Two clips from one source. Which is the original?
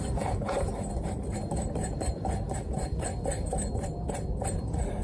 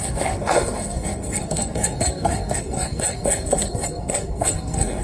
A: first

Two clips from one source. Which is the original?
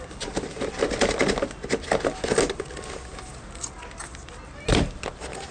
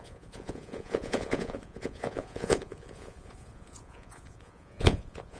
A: first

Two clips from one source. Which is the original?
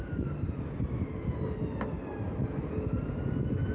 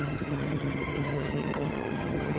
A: first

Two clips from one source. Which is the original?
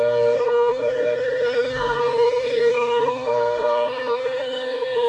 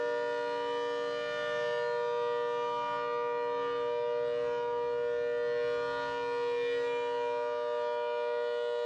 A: second